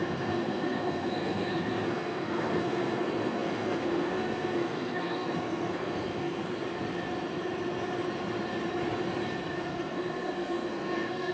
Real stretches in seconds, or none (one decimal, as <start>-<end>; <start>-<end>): 6.4-9.4